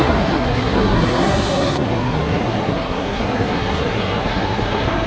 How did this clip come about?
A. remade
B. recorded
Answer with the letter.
A